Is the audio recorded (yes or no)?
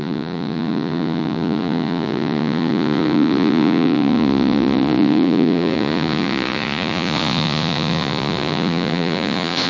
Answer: no